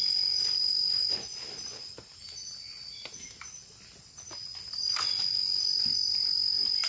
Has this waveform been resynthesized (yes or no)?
no